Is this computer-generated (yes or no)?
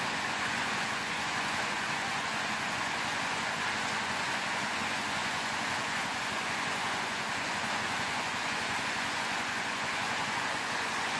yes